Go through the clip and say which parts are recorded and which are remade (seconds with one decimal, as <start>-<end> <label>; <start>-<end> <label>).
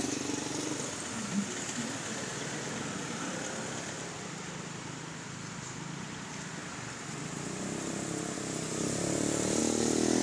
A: 0.0-10.2 recorded